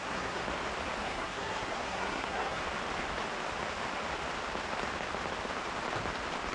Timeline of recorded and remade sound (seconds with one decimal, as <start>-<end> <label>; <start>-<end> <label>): 0.0-0.4 remade; 0.4-1.0 recorded; 1.0-2.6 remade; 2.6-6.5 recorded